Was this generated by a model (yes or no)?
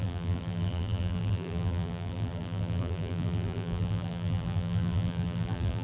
yes